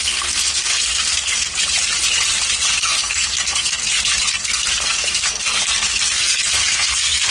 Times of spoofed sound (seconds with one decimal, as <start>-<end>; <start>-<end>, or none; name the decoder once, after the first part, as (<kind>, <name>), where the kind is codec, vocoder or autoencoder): 0.0-1.5 (codec, SNAC); 2.8-3.8; 4.3-7.3